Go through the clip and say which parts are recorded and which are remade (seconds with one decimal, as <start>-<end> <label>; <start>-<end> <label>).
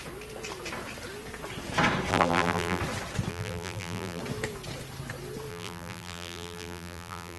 0.0-2.1 recorded; 2.1-2.8 remade; 2.8-3.3 recorded; 3.3-4.2 remade; 4.2-5.5 recorded; 5.5-7.4 remade